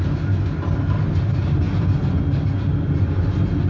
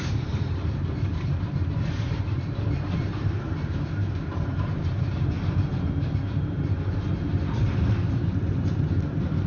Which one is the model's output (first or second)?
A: second